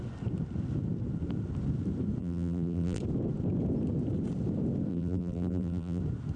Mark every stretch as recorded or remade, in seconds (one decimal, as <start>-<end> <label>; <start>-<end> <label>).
0.0-2.2 recorded; 2.2-3.0 remade; 3.0-4.9 recorded; 4.9-6.0 remade; 6.0-6.4 recorded